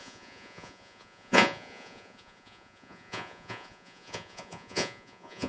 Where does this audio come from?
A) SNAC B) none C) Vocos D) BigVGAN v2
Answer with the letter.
C